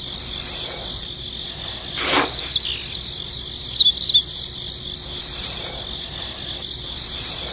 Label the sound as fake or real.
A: real